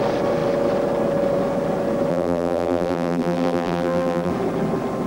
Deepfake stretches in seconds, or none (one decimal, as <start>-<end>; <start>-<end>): 2.1-4.3